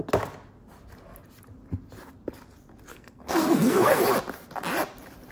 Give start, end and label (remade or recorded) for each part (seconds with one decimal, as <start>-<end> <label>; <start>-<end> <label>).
0.0-2.9 recorded; 2.9-4.0 remade; 4.0-5.3 recorded